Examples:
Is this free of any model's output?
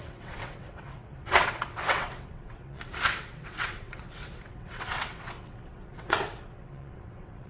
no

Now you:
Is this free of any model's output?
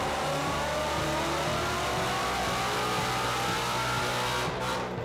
yes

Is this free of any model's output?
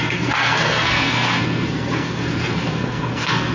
no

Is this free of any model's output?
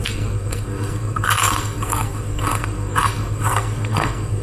no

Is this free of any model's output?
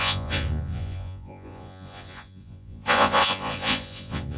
no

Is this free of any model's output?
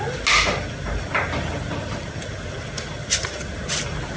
yes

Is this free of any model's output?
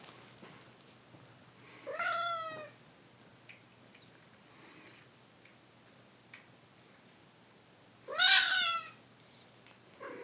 yes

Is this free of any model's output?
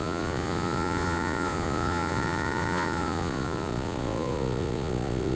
no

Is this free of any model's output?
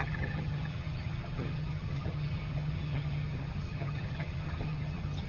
no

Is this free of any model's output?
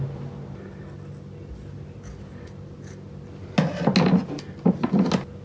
yes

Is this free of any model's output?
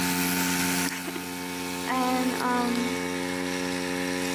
yes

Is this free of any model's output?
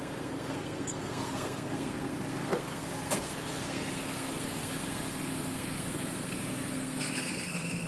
no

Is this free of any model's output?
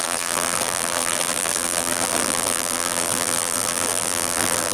no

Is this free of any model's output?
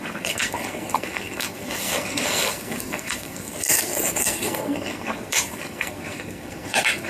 no